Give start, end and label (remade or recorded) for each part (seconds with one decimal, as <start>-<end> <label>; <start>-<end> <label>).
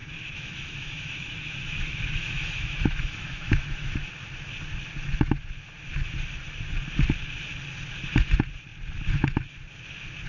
0.0-4.1 remade; 4.1-10.3 recorded